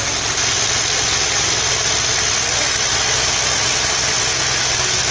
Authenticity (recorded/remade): recorded